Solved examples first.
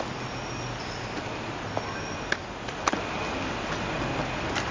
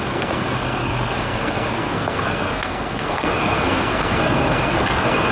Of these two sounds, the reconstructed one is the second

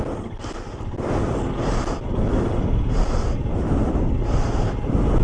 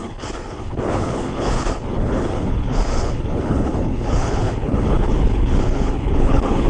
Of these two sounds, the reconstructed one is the second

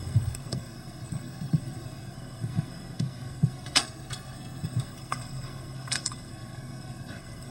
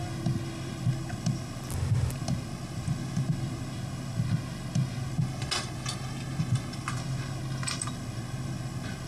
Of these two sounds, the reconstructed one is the first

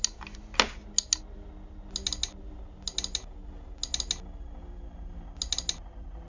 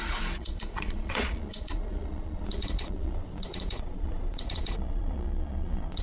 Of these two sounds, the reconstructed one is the second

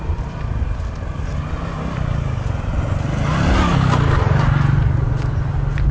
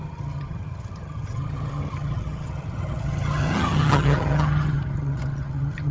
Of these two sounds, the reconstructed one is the second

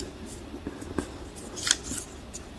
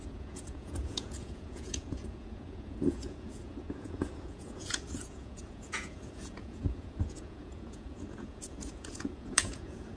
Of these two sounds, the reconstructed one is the second